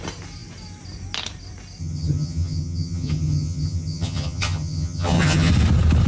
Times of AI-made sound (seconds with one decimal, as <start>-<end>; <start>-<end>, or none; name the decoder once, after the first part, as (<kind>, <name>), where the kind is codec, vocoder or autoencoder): 1.8-5.5 (vocoder, HiFi-GAN)